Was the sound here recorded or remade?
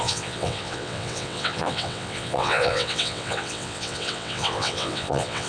remade